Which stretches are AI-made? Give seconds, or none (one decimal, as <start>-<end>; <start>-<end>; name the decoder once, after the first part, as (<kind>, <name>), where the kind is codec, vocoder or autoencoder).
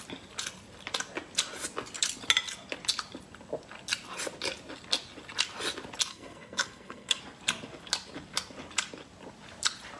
6.1-7.2 (codec, SNAC)